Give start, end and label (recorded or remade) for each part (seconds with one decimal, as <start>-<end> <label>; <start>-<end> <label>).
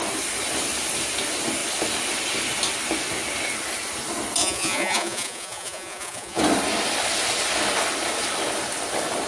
0.0-4.4 recorded; 4.4-6.4 remade; 6.4-9.3 recorded